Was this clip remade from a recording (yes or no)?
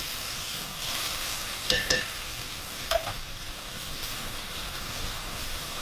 yes